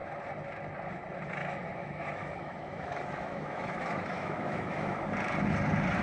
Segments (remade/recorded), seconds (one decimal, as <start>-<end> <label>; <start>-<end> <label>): 0.0-1.4 recorded; 1.4-5.0 remade; 5.0-6.0 recorded